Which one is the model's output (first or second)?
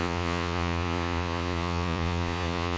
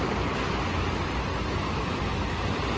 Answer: first